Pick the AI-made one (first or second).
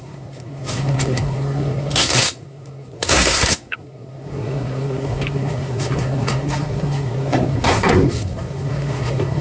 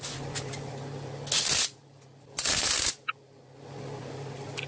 first